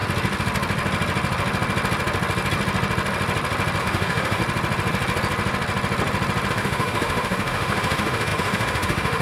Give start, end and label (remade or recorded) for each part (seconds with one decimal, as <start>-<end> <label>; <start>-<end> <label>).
0.0-3.8 recorded; 3.8-4.4 remade; 4.4-6.5 recorded; 6.5-9.2 remade